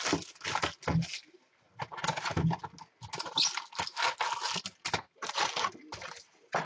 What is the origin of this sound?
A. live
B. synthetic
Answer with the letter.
A